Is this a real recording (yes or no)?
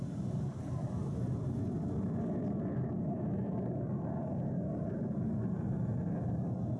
no